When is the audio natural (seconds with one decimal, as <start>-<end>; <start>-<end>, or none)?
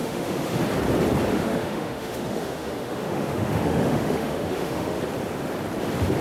0.6-1.3; 5.0-6.2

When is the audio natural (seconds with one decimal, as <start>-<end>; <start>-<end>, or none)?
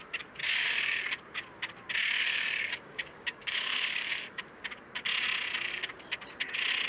0.0-0.4; 1.0-2.2; 4.4-6.9